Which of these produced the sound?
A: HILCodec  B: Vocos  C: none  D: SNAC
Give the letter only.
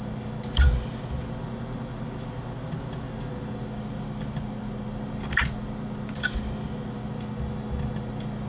C